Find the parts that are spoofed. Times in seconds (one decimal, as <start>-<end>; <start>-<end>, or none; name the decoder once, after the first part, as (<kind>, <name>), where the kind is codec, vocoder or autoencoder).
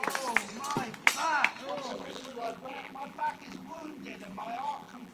1.9-5.1 (vocoder, BigVGAN v2)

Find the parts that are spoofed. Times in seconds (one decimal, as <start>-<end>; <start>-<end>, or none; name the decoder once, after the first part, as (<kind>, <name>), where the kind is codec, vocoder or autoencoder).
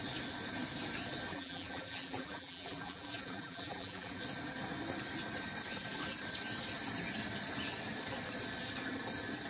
1.3-4.2 (vocoder, BigVGAN v2)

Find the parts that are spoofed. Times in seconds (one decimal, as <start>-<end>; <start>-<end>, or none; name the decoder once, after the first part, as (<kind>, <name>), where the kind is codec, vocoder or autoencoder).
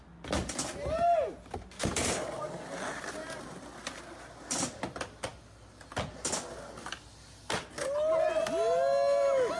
none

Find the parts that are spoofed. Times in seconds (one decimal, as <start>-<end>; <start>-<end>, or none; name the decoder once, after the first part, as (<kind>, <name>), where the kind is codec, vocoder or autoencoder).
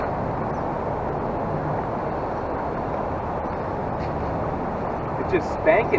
none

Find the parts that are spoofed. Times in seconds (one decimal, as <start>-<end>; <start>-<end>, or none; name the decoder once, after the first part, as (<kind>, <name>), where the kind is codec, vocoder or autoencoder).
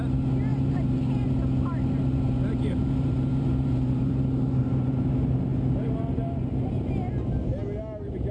0.5-5.0 (vocoder, BigVGAN v2)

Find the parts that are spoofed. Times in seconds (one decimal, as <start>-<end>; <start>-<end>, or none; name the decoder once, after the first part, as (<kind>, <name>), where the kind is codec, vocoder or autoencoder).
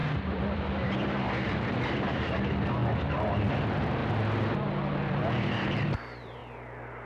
0.0-2.8 (vocoder, BigVGAN v2); 3.6-4.0; 5.8-6.4